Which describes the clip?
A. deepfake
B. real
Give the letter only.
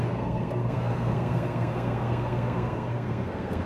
A